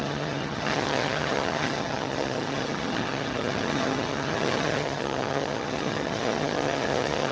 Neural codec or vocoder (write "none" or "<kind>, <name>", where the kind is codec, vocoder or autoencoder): vocoder, HiFi-GAN